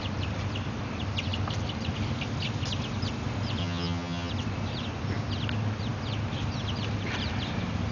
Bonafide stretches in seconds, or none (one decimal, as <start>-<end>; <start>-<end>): 0.0-3.6; 4.3-7.9